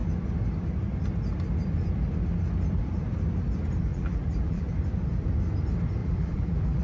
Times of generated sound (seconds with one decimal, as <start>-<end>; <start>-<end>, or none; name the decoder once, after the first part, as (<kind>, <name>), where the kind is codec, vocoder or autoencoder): 3.9-4.7 (vocoder, BigVGAN v2); 6.0-6.8